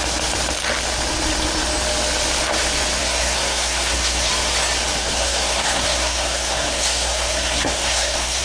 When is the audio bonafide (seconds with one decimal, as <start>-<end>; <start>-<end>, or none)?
0.0-3.0; 4.3-5.0